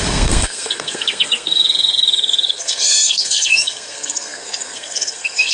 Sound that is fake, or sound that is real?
fake